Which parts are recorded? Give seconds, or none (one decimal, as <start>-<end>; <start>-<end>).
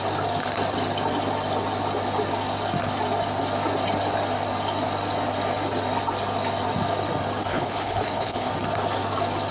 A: 0.0-7.5; 8.5-9.5